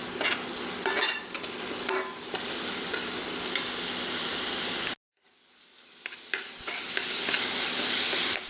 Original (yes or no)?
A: yes